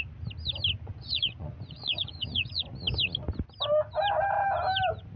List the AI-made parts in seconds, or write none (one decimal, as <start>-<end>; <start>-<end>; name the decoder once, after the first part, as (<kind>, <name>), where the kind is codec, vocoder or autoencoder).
0.9-2.6 (vocoder, Vocos)